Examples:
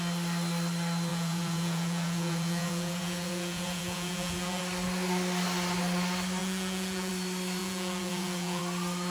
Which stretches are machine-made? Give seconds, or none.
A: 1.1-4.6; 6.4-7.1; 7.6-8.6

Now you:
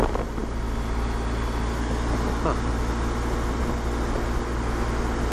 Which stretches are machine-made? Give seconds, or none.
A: none

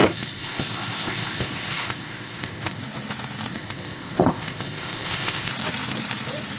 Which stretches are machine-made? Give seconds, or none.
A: 0.0-2.8; 3.5-5.5

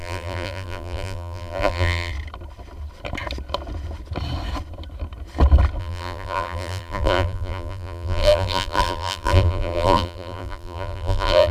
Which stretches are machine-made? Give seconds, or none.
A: 0.0-2.1; 5.8-11.5

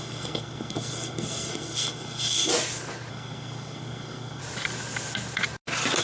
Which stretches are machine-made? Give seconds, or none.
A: 0.0-2.5; 3.1-4.4

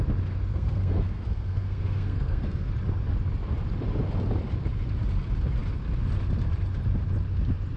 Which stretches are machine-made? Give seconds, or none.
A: 0.5-2.7